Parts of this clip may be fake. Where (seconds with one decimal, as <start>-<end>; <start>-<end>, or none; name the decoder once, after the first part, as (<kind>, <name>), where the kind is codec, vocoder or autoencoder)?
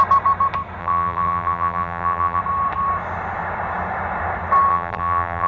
0.8-2.4 (vocoder, BigVGAN v2); 4.7-5.5